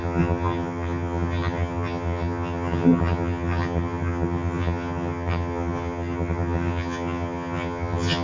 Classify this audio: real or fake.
fake